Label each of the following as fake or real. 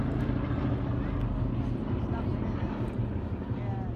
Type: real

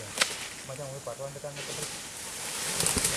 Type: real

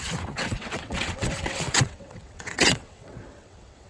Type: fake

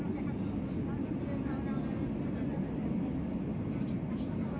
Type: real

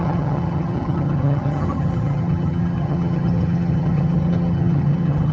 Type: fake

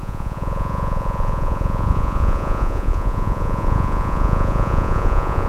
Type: fake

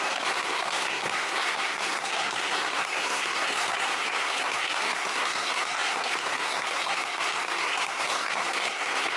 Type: fake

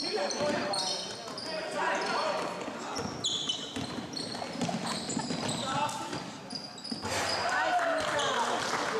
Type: real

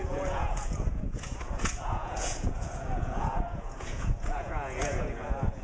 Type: fake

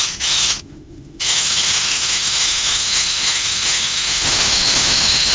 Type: fake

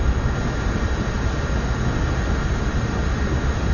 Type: real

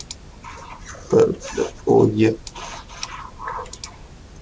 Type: real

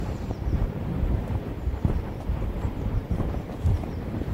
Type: fake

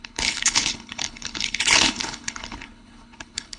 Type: fake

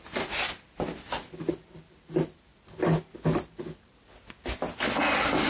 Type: real